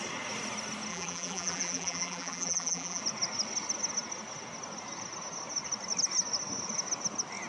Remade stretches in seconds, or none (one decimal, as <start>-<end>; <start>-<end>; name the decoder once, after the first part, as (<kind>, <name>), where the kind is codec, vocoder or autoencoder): 0.9-3.0 (vocoder, BigVGAN v2)